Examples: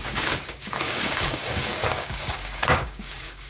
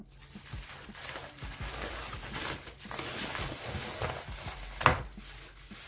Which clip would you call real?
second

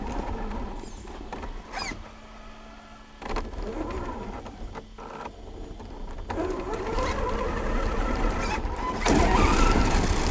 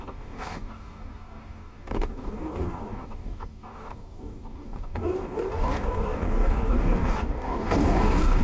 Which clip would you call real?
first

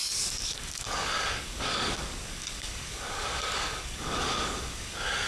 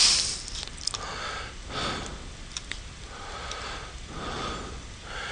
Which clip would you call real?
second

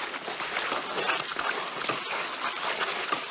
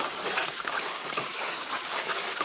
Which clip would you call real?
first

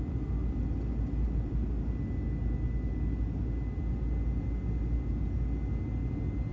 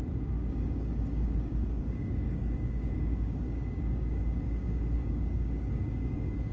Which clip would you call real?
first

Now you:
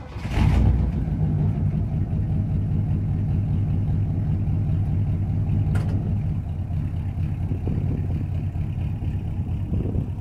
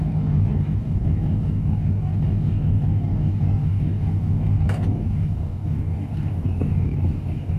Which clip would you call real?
first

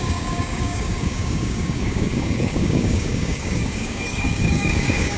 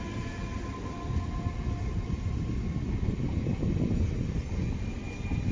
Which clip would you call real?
second